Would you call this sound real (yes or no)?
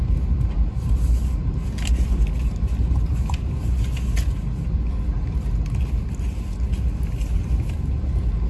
yes